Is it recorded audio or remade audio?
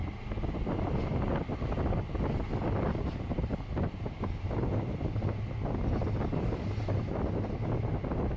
recorded